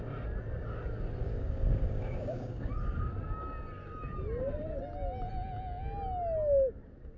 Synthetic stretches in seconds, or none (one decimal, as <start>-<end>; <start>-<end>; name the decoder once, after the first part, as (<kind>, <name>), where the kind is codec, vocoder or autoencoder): 1.2-2.7 (codec, DAC)